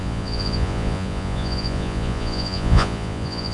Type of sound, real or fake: fake